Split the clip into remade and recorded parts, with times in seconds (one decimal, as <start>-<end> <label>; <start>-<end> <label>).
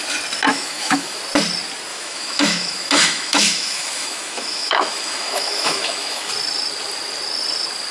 0.0-0.5 recorded; 0.5-1.2 remade; 1.2-1.9 recorded; 1.9-6.3 remade; 6.3-7.9 recorded